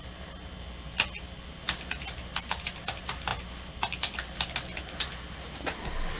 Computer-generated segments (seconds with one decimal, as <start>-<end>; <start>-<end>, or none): none

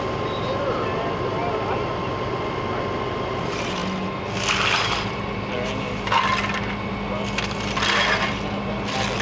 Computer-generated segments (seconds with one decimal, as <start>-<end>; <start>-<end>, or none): none

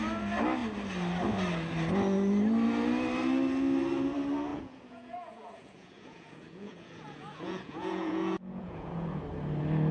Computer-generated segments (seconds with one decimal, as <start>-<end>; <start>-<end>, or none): 4.5-9.2

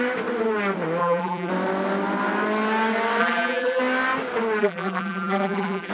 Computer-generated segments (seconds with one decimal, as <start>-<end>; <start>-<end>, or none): 1.0-1.5; 3.2-3.8; 4.6-5.9